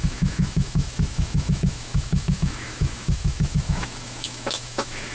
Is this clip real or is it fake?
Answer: fake